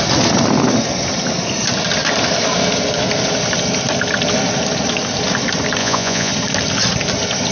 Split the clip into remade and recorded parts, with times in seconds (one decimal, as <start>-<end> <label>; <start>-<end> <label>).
0.0-5.8 recorded; 5.8-6.3 remade; 6.3-7.5 recorded